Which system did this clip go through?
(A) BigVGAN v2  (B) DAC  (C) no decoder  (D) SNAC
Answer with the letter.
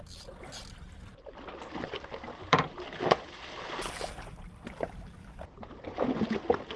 C